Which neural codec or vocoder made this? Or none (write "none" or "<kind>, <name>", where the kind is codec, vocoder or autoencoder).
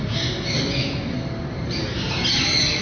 none